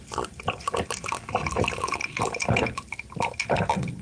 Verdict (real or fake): real